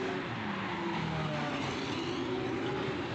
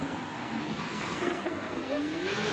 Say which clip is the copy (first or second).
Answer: second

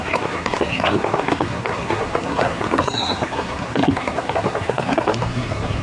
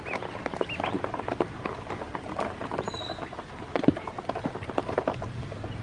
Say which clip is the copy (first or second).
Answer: first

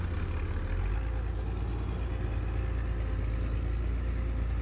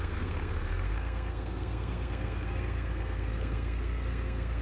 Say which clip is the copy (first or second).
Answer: second